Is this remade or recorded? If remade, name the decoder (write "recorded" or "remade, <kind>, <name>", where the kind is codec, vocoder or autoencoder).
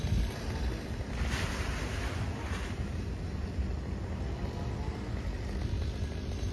recorded